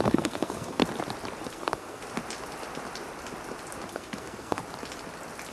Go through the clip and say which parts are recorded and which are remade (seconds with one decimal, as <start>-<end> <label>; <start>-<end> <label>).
0.0-0.8 remade; 0.8-1.5 recorded; 1.5-2.0 remade; 2.0-3.9 recorded; 3.9-4.6 remade; 4.6-5.5 recorded